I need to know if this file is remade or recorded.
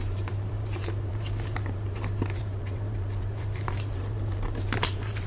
remade